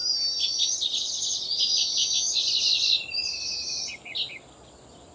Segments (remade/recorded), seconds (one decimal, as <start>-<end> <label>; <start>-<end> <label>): 0.0-5.1 recorded